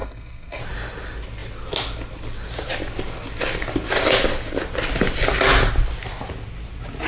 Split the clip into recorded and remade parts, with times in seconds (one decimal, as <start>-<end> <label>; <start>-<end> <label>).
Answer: 0.0-0.6 remade; 0.6-7.1 recorded